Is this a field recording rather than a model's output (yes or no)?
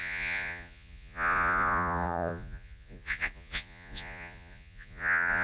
no